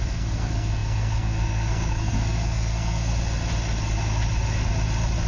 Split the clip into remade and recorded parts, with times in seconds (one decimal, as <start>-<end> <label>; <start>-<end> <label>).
0.0-3.1 remade; 3.1-5.3 recorded